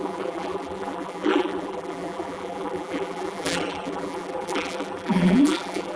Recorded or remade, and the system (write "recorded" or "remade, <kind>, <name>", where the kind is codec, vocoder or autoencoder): remade, vocoder, BigVGAN v2